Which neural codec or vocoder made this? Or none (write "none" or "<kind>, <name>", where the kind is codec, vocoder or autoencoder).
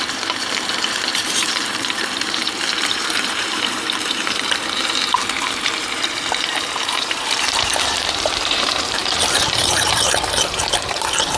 vocoder, BigVGAN v2